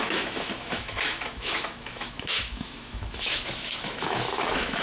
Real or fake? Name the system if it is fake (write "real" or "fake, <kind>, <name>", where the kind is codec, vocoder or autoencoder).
fake, autoencoder, DAC-VAE